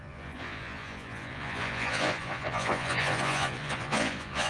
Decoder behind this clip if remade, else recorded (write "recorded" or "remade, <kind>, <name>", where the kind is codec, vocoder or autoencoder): remade, vocoder, Vocos